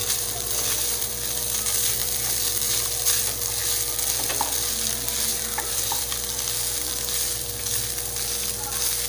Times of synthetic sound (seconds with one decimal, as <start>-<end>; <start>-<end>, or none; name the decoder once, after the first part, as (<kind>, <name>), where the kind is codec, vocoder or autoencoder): 0.0-1.1 (vocoder, BigVGAN v2); 2.0-2.8; 5.3-7.6